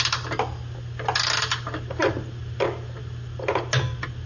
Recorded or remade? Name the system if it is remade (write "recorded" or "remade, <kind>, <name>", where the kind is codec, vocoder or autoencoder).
recorded